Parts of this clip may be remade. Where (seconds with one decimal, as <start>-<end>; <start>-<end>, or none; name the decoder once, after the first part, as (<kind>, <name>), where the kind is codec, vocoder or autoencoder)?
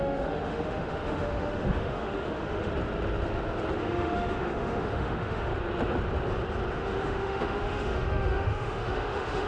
0.0-2.7 (autoencoder, DAC-VAE); 3.8-5.5; 6.7-9.5